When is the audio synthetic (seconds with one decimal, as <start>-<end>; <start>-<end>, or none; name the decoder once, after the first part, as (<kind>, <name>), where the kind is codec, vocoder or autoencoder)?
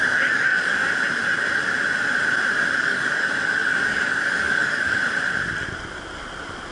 0.0-0.8 (codec, DAC); 2.8-5.0